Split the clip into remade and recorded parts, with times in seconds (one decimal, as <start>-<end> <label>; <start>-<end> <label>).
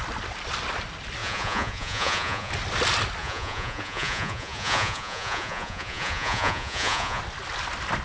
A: 0.0-1.2 recorded; 1.2-2.5 remade; 2.5-3.2 recorded; 3.2-7.2 remade; 7.2-8.0 recorded